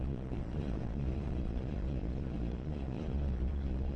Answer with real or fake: fake